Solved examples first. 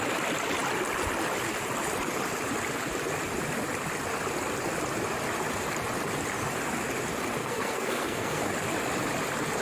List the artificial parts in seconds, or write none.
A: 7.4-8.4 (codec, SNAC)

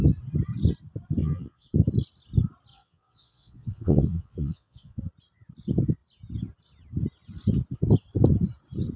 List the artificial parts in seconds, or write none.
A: 1.2-1.7 (vocoder, Vocos); 2.7-5.0

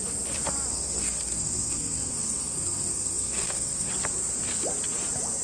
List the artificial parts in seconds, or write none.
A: 0.7-3.9 (codec, SNAC)

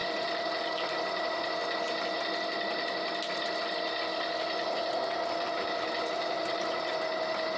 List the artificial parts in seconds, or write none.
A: none